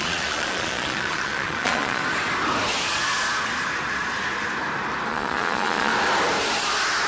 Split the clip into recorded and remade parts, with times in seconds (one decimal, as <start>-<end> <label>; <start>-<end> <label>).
0.0-2.0 remade; 2.0-5.1 recorded; 5.1-5.9 remade; 5.9-7.1 recorded